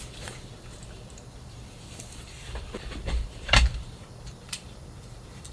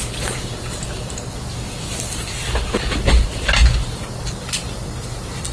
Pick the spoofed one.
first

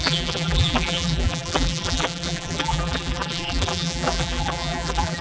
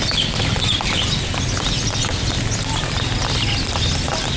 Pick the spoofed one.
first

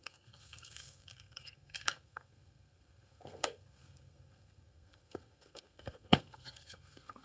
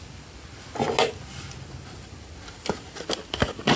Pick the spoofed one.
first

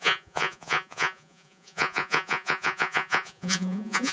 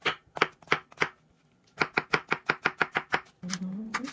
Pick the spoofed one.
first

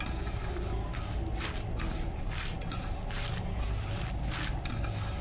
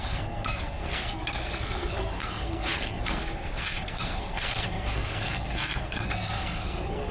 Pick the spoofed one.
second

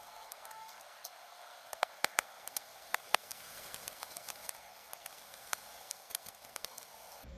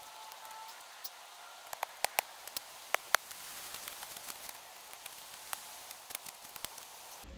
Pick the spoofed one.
first